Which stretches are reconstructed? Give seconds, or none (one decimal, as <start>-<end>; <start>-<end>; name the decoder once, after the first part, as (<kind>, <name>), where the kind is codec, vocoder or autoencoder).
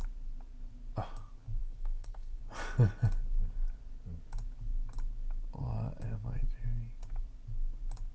1.6-2.4 (codec, SNAC)